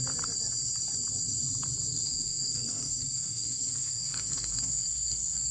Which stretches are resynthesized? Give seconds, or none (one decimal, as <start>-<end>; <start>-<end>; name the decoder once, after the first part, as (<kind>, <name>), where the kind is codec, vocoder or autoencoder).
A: 1.9-5.5 (codec, SNAC)